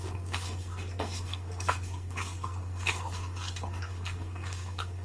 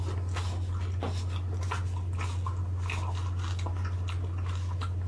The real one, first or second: second